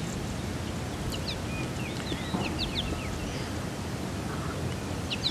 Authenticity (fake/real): real